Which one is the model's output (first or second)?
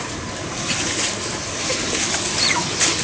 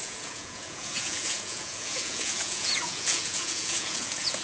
second